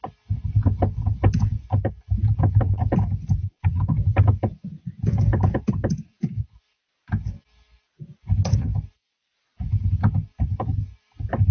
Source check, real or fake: real